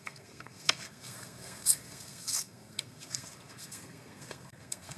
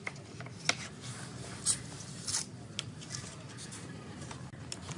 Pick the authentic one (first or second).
second